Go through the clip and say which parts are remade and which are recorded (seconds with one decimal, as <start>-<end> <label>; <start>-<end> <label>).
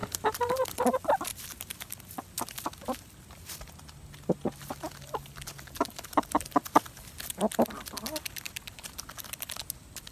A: 0.0-10.1 recorded